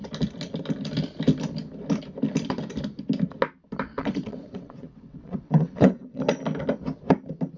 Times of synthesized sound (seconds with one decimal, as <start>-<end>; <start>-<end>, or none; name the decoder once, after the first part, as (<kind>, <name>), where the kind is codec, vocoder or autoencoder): 3.9-6.2 (vocoder, WaveNeXt)